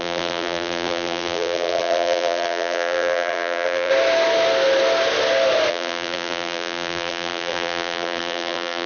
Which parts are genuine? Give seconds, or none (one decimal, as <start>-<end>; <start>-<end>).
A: 3.9-5.7